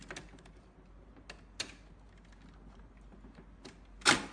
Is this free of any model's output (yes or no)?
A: yes